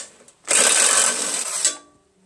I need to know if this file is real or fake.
real